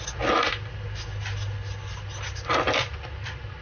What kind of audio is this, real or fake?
real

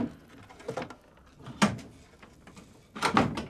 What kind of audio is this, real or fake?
real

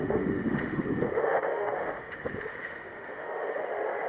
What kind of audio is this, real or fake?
fake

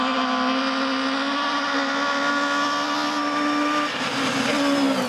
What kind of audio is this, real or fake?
real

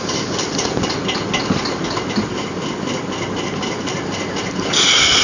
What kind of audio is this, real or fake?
real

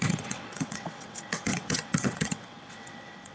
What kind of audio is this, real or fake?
fake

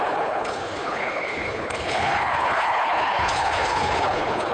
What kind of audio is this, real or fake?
fake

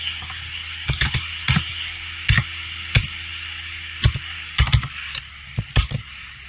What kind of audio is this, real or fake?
real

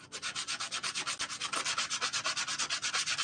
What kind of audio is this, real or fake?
real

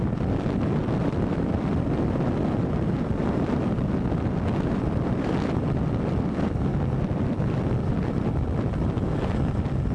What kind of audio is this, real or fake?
real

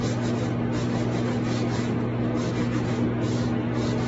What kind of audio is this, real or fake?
real